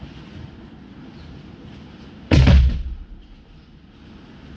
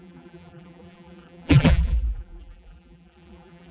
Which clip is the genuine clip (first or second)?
first